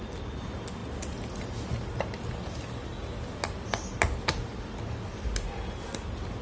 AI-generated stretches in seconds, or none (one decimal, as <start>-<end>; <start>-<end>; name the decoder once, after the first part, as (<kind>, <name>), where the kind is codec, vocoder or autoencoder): none